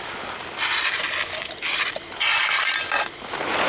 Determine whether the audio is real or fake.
fake